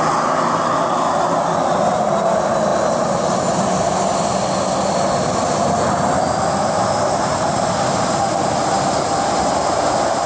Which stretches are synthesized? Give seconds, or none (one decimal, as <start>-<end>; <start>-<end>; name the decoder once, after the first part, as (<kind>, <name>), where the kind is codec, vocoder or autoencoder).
none